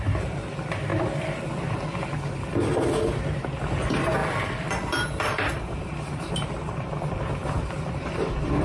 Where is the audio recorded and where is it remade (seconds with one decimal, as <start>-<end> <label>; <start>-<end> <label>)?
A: 0.0-0.9 recorded; 0.9-2.6 remade; 2.6-4.2 recorded; 4.2-6.3 remade; 6.3-7.4 recorded; 7.4-8.6 remade